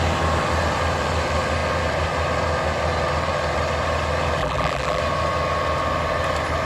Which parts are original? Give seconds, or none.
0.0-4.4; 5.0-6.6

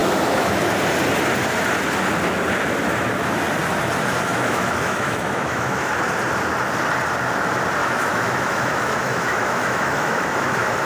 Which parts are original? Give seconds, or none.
0.7-4.3; 5.9-7.8